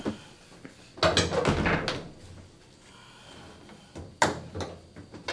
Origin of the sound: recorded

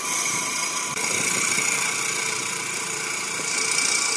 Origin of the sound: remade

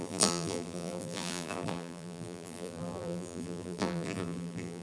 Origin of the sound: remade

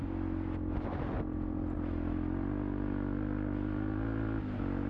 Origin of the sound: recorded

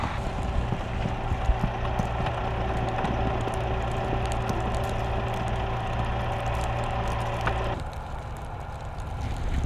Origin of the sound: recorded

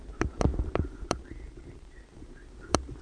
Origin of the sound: remade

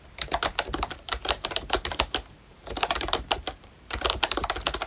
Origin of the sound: remade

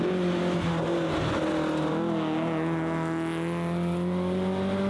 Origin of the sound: recorded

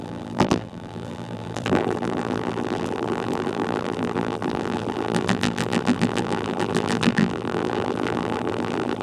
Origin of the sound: remade